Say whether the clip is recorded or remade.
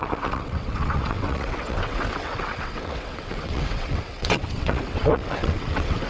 remade